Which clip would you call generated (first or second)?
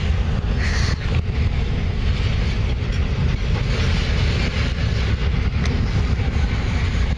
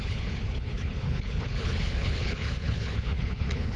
second